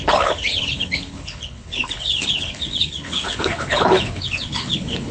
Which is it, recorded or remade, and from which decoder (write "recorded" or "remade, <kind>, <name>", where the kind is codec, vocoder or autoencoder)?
remade, codec, HILCodec